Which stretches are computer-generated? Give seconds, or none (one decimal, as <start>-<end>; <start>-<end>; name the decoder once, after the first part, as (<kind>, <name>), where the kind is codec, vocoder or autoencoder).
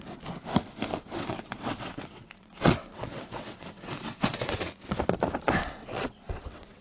0.9-5.0 (vocoder, WaveNeXt); 5.8-6.8